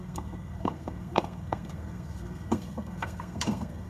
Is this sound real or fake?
fake